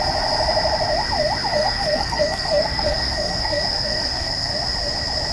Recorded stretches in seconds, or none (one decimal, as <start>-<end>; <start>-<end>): 0.0-1.5; 4.5-5.3